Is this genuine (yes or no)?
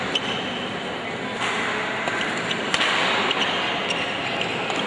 yes